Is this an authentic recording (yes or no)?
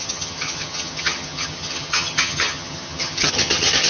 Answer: no